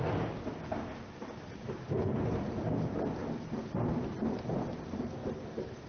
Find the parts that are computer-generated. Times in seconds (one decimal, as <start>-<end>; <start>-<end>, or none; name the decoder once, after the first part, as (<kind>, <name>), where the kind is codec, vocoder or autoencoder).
none